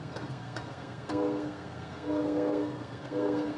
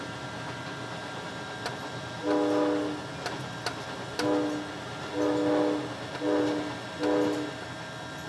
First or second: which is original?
second